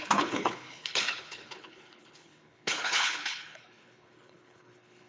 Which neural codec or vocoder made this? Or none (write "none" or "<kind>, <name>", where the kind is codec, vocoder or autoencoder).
codec, HILCodec